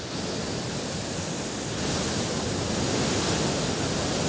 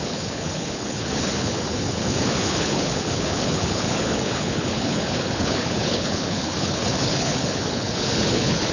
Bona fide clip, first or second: first